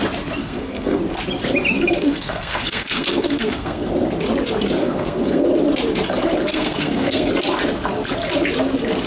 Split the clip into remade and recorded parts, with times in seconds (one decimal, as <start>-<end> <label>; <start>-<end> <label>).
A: 0.0-0.4 recorded; 0.4-1.0 remade; 1.0-1.7 recorded; 1.7-3.9 remade; 3.9-4.8 recorded; 4.8-5.5 remade; 5.5-6.5 recorded; 6.5-7.3 remade; 7.3-9.1 recorded